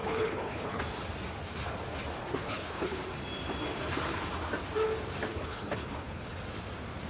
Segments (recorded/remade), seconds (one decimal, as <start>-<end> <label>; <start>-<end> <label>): 0.0-0.8 remade; 0.8-2.2 recorded; 2.2-3.0 remade; 3.0-5.3 recorded; 5.3-6.4 remade; 6.4-7.1 recorded